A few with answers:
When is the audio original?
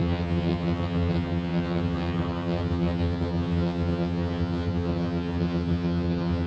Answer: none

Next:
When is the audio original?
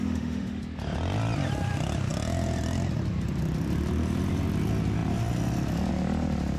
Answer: 0.6-6.6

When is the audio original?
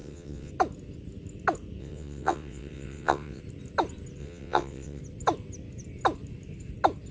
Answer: 0.5-1.8; 3.4-4.2; 5.0-7.1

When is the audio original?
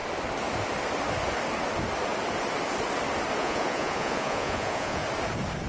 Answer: 0.0-3.4; 5.0-5.7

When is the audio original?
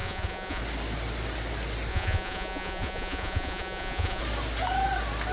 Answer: 0.6-1.9; 4.2-5.3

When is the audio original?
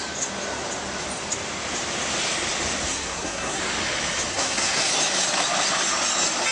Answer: 0.0-2.9; 3.6-4.3; 4.9-6.5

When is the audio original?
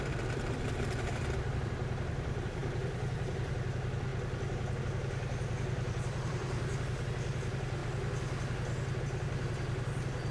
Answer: 4.1-4.8; 7.8-9.0